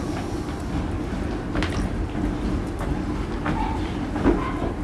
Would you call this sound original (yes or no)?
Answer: yes